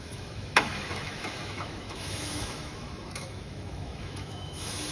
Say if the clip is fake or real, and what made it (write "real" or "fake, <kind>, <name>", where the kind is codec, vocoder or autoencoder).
fake, autoencoder, DAC-VAE